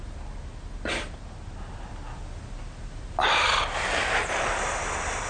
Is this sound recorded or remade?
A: recorded